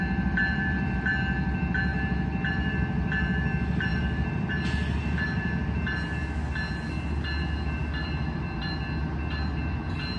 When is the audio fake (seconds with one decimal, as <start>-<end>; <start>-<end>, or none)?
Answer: 3.9-4.5; 7.8-8.4